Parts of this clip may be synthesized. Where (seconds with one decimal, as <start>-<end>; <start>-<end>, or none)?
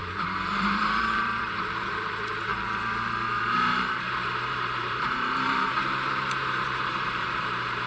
0.0-2.5; 3.4-7.9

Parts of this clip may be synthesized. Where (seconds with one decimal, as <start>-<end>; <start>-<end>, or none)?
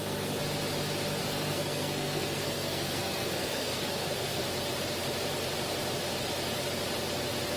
0.0-0.4; 1.2-4.4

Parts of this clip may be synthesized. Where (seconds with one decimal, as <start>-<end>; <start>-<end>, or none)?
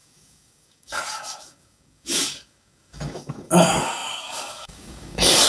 0.0-5.5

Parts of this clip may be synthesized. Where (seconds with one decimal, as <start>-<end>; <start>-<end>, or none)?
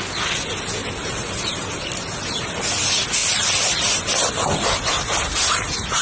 0.8-2.7; 3.2-4.7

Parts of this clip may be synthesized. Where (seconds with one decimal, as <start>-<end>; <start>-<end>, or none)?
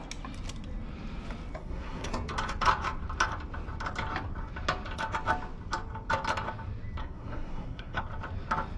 1.6-2.1; 7.0-8.0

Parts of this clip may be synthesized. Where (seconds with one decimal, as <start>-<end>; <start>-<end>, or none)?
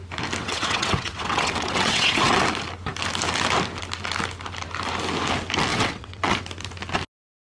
0.4-2.4; 5.7-6.4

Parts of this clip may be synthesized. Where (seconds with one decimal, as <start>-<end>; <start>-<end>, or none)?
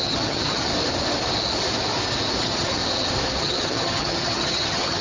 0.0-0.7; 2.4-2.8; 3.4-5.0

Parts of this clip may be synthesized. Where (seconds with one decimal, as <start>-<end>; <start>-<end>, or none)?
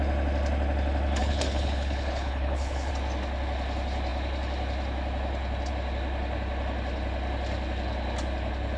1.2-2.9